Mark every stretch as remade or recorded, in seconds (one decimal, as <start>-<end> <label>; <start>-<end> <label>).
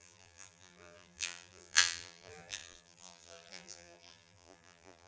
0.0-5.1 remade